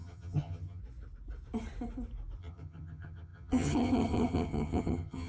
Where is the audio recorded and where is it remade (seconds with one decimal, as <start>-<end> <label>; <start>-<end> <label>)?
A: 0.0-0.8 remade; 0.8-2.4 recorded; 2.4-5.3 remade